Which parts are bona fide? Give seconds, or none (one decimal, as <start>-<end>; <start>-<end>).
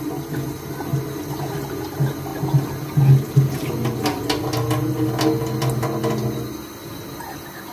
0.0-0.9; 1.5-7.7